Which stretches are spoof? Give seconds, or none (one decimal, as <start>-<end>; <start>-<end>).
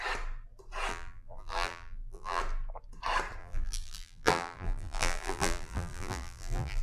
0.9-2.4; 3.4-6.8